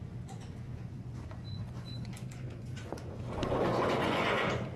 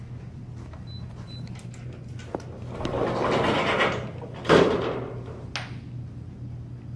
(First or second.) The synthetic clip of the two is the first